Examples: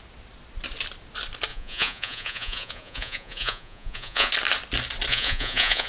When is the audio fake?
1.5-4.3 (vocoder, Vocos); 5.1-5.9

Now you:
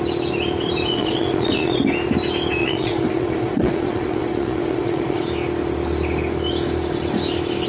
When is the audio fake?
1.0-1.8 (vocoder, Vocos); 2.6-5.2